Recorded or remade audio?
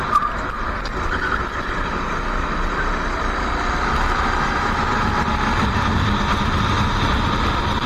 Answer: recorded